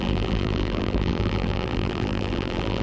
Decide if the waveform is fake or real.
fake